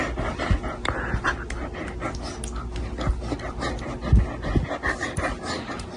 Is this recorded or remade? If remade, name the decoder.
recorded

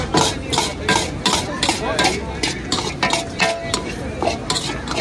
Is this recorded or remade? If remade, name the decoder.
recorded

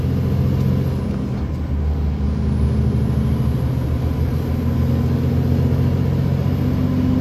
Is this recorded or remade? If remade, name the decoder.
recorded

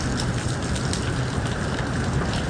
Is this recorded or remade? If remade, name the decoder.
recorded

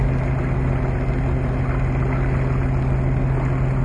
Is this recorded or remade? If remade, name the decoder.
recorded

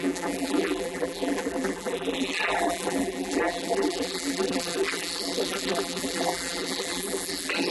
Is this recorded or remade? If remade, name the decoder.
remade, vocoder, BigVGAN v2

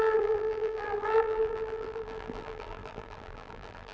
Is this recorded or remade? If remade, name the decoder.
remade, vocoder, BigVGAN v2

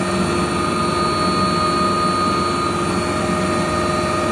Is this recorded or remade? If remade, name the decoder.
recorded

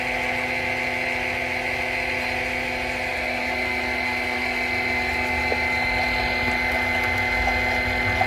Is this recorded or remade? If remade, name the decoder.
recorded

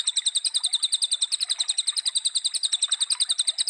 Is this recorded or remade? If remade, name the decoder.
remade, vocoder, BigVGAN v2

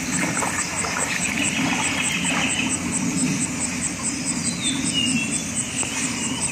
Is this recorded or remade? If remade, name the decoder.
recorded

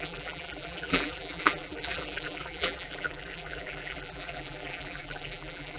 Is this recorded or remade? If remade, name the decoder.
remade, vocoder, BigVGAN v2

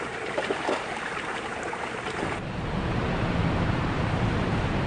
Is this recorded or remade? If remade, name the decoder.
remade, vocoder, BigVGAN v2